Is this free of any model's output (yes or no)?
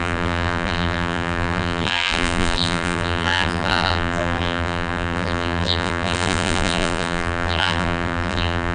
no